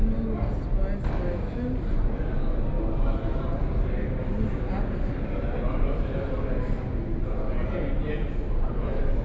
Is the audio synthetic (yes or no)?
no